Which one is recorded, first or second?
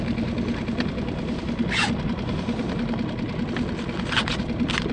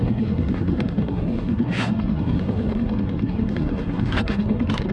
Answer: first